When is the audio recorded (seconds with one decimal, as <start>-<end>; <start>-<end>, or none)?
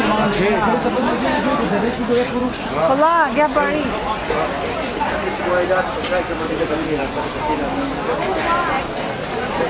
0.0-9.7